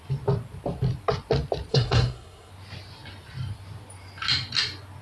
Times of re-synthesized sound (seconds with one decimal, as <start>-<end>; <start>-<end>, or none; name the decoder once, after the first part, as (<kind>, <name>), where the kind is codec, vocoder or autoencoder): 1.7-2.5 (codec, SNAC)